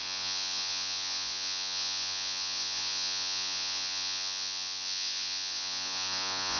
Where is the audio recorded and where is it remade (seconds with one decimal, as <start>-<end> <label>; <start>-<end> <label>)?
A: 0.0-6.6 remade